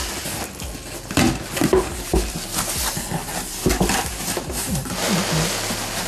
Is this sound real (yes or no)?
yes